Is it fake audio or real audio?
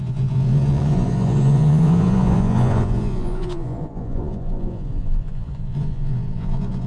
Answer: fake